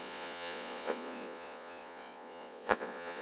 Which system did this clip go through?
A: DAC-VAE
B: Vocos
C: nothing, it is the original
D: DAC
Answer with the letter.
B